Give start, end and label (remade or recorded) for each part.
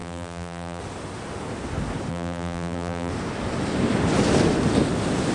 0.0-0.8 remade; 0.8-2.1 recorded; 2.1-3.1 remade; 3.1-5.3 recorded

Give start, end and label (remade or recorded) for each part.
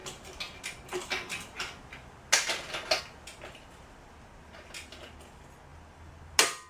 0.0-5.7 recorded; 5.7-6.2 remade; 6.2-6.7 recorded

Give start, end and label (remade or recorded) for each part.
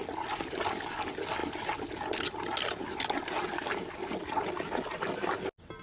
0.0-5.8 recorded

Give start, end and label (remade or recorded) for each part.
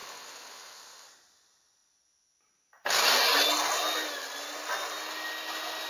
0.0-5.9 recorded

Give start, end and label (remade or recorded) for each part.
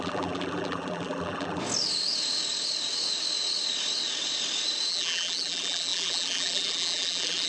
0.0-1.6 remade; 1.6-4.9 recorded; 4.9-7.5 remade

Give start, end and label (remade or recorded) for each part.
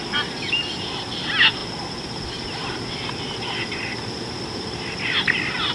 0.0-5.7 recorded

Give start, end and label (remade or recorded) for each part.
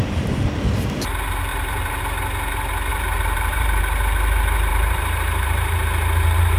0.0-1.5 recorded; 1.5-2.0 remade; 2.0-2.9 recorded; 2.9-3.8 remade; 3.8-4.7 recorded; 4.7-6.6 remade